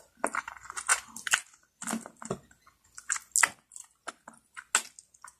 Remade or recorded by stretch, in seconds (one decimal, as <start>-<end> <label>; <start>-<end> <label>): 0.0-5.4 recorded